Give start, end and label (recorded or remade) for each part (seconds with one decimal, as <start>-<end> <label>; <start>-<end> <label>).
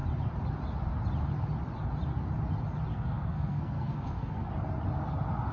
0.0-2.9 recorded; 2.9-4.5 remade; 4.5-5.5 recorded